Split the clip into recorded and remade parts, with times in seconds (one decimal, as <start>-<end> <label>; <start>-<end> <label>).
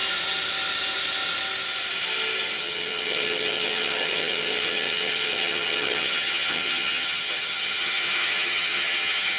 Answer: 0.0-2.6 recorded; 2.6-9.4 remade